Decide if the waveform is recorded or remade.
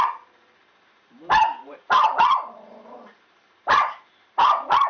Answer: remade